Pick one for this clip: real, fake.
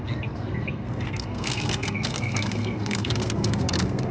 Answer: fake